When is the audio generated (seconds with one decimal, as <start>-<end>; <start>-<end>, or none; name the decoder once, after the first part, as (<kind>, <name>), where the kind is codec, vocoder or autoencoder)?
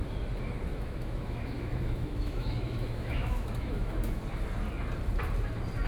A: 0.7-4.2 (autoencoder, DAC-VAE)